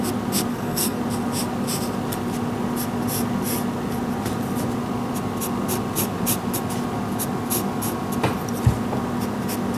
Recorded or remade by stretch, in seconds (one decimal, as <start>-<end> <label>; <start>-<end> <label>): 0.0-0.5 recorded; 0.5-1.0 remade; 1.0-9.8 recorded